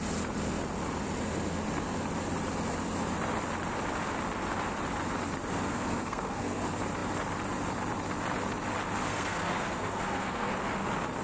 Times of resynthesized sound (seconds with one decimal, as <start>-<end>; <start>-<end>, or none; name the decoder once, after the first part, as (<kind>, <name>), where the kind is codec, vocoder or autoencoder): 5.7-6.6 (codec, SNAC); 9.1-10.5